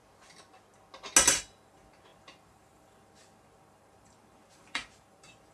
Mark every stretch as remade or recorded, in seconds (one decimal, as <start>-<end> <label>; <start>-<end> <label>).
0.0-1.3 recorded; 1.3-5.5 remade